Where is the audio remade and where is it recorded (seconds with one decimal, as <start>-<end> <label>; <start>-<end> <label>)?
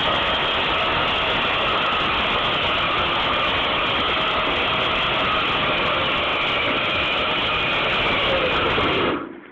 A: 0.0-9.5 recorded